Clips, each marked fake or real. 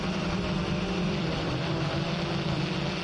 fake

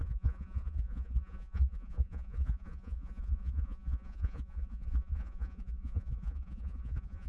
fake